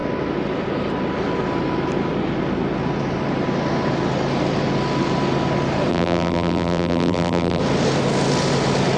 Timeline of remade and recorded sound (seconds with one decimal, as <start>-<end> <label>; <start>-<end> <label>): 0.0-5.9 recorded; 5.9-7.6 remade; 7.6-9.0 recorded